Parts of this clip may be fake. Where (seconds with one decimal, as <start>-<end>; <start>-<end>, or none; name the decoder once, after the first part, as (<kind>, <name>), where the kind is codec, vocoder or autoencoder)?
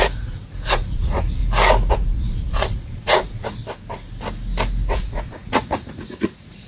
0.0-1.4 (vocoder, Vocos); 1.9-3.6; 4.9-6.7